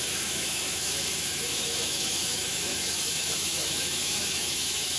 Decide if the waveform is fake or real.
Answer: fake